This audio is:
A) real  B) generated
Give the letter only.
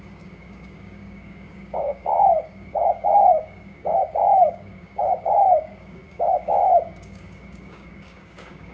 B